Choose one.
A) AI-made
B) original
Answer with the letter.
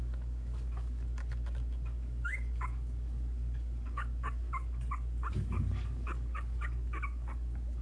A